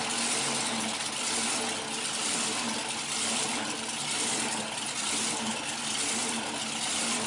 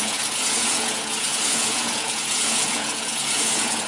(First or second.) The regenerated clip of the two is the second